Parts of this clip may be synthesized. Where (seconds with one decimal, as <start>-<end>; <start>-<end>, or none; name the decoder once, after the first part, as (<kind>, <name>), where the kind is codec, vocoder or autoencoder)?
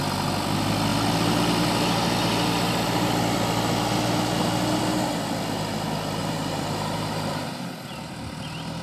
6.2-7.7 (vocoder, BigVGAN v2)